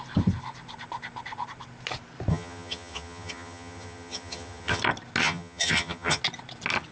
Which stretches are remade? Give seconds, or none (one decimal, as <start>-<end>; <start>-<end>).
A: 2.3-4.8; 5.2-6.2